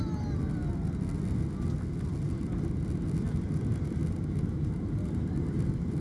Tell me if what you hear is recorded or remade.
recorded